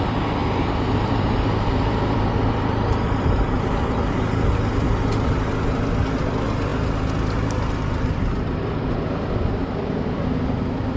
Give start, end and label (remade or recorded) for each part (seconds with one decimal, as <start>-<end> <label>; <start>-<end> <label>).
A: 0.0-0.4 recorded; 0.4-4.1 remade; 4.1-9.6 recorded; 9.6-11.0 remade

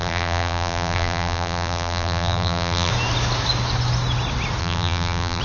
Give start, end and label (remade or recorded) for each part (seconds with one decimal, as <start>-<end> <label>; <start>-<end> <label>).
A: 0.0-2.9 remade; 2.9-4.6 recorded; 4.6-5.4 remade